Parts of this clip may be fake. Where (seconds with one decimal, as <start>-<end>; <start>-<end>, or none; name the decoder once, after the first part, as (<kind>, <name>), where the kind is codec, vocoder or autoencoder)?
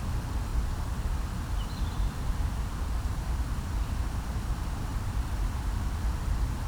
0.5-4.1 (vocoder, BigVGAN v2); 4.9-5.8